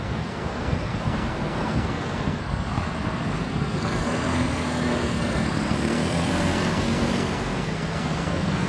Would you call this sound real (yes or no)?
no